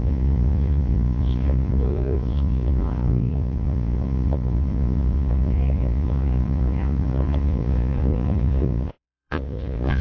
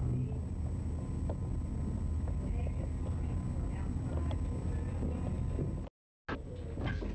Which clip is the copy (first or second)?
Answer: first